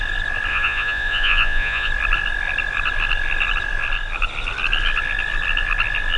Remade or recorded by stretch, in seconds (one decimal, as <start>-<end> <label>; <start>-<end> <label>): 0.0-0.5 recorded; 0.5-1.9 remade; 1.9-6.2 recorded